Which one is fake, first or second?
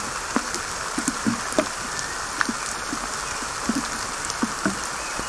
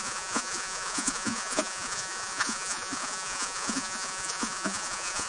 second